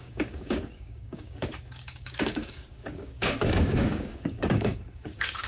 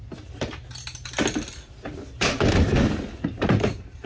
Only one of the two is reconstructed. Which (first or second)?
first